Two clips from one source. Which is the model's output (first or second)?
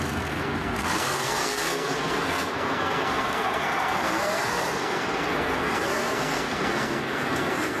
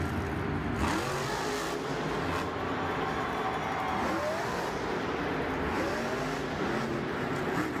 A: first